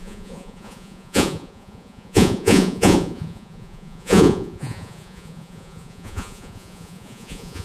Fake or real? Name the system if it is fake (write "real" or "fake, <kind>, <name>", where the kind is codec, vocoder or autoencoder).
fake, vocoder, Vocos